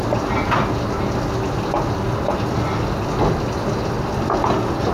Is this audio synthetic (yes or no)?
no